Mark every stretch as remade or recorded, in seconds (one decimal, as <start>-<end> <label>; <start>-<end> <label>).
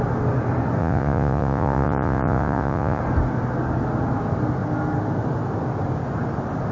0.0-0.8 recorded; 0.8-3.0 remade; 3.0-6.7 recorded